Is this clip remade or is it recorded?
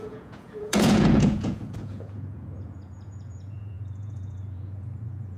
remade